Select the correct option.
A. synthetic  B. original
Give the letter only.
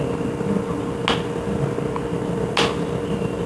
B